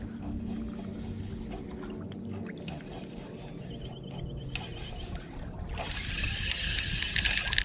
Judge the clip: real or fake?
real